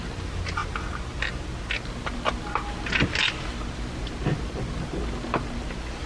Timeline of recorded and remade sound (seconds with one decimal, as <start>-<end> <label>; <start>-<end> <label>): 0.0-6.1 recorded